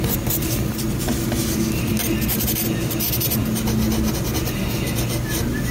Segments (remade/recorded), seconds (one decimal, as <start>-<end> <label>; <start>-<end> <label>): 0.0-5.7 recorded